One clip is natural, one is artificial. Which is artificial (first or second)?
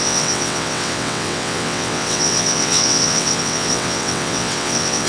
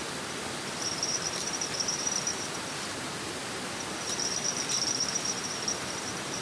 first